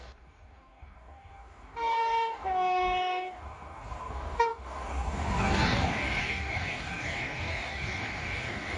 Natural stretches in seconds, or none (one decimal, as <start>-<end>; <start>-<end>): none